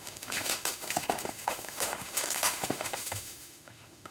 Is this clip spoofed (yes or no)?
yes